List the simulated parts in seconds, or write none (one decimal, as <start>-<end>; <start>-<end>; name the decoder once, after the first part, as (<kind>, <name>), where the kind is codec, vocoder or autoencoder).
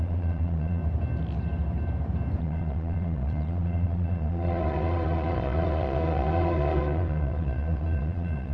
0.0-0.8 (vocoder, Vocos); 2.4-8.5